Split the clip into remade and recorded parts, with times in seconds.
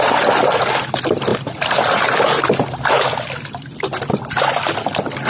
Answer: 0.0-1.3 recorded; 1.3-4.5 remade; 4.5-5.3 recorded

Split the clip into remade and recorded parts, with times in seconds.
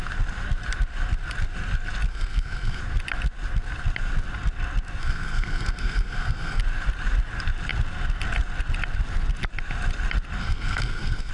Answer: 0.0-2.1 recorded; 2.1-2.8 remade; 2.8-5.0 recorded; 5.0-6.6 remade; 6.6-10.4 recorded; 10.4-11.3 remade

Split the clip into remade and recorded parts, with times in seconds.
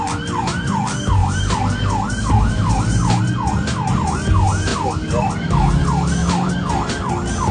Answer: 0.0-1.2 recorded; 1.2-3.2 remade; 3.2-6.2 recorded; 6.2-7.1 remade; 7.1-7.5 recorded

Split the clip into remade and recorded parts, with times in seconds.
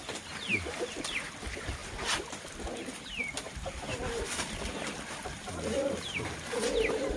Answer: 0.0-7.2 recorded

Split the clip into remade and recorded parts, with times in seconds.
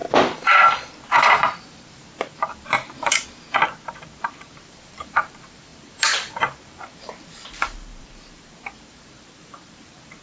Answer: 0.0-1.3 recorded; 1.3-10.2 remade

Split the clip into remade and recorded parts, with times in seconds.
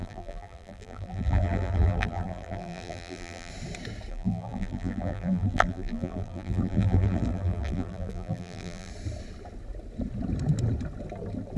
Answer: 0.0-3.5 remade; 3.5-4.1 recorded; 4.1-8.9 remade; 8.9-11.6 recorded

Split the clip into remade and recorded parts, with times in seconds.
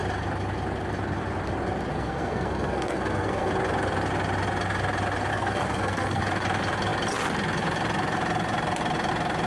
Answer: 0.0-1.9 recorded; 1.9-3.5 remade; 3.5-5.3 recorded; 5.3-6.2 remade; 6.2-9.5 recorded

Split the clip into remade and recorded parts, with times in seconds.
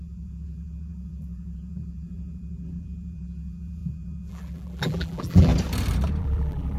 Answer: 0.0-5.5 remade; 5.5-6.2 recorded; 6.2-6.8 remade